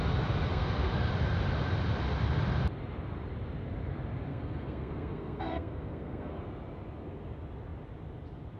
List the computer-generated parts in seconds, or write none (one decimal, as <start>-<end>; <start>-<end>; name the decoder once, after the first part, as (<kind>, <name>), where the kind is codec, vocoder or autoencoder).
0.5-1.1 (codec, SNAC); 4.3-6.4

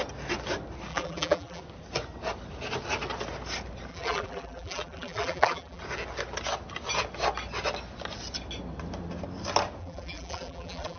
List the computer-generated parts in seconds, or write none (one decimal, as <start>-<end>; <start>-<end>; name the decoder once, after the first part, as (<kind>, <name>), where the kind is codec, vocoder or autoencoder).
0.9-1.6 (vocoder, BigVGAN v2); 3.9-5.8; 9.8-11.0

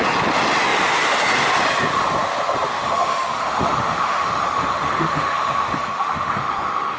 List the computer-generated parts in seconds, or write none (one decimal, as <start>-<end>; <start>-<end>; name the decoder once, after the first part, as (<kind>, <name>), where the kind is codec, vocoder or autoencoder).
2.7-7.0 (autoencoder, DAC-VAE)

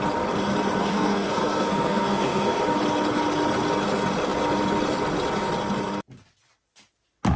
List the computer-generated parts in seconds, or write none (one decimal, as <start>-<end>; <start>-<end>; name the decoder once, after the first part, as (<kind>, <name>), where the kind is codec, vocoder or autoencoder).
0.8-2.6 (codec, SNAC)

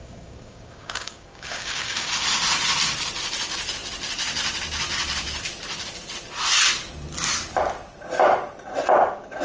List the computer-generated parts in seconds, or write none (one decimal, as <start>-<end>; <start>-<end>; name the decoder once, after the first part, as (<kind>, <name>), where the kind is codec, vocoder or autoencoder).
0.0-2.1 (codec, DAC)

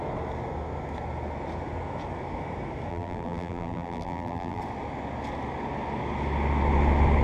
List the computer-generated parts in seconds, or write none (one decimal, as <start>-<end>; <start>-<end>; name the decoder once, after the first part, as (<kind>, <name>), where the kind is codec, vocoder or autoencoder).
2.9-4.6 (vocoder, BigVGAN v2)